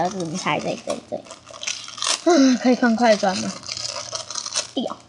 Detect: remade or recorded recorded